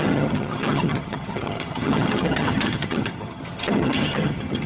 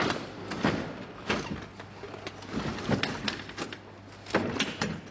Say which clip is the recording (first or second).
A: second